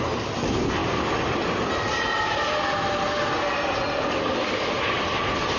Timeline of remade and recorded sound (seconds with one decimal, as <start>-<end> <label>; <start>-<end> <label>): 0.0-5.6 recorded